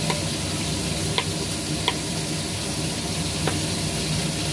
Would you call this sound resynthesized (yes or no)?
no